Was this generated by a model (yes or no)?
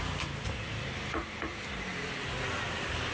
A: no